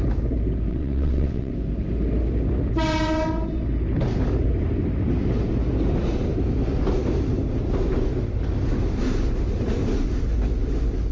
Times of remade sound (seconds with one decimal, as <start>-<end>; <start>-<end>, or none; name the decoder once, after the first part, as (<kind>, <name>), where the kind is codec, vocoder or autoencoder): 0.7-1.5 (vocoder, WaveNeXt)